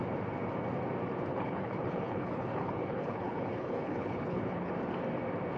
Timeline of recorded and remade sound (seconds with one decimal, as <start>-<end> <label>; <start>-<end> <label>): 0.0-1.3 recorded; 1.3-4.7 remade; 4.7-5.6 recorded